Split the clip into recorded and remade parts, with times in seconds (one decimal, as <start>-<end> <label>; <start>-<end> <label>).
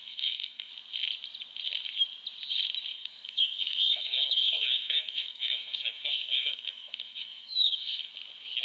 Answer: 0.0-0.7 remade; 0.7-2.9 recorded; 2.9-8.1 remade; 8.1-8.6 recorded